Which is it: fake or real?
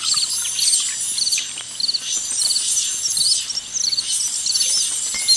real